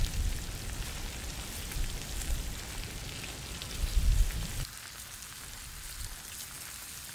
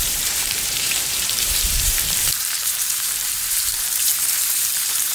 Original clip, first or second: first